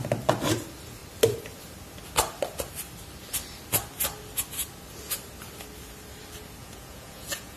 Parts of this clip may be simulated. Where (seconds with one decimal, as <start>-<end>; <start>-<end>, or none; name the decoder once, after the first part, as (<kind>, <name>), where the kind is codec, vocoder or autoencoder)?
6.6-7.6 (vocoder, Vocos)